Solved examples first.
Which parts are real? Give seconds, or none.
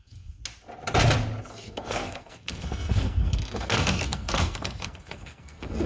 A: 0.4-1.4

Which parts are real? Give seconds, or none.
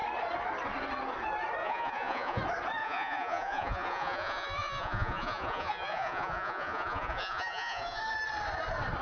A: 0.0-1.6; 2.4-2.8; 8.0-9.0